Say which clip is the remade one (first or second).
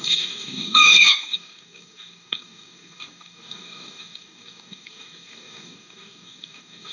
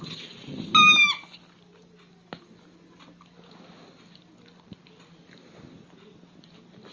first